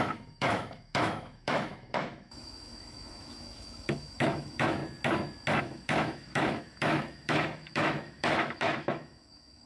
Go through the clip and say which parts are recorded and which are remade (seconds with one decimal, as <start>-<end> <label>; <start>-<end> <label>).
0.0-4.8 remade; 4.8-5.6 recorded; 5.6-9.7 remade